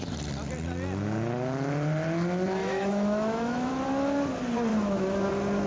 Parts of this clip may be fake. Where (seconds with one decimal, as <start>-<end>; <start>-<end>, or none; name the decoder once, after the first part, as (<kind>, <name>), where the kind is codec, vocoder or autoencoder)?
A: 2.6-3.7 (autoencoder, DAC-VAE); 4.7-5.3